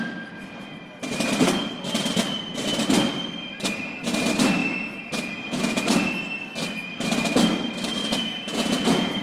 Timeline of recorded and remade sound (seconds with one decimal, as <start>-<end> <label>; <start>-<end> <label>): 0.0-4.6 recorded; 4.6-6.1 remade; 6.1-8.0 recorded; 8.0-9.2 remade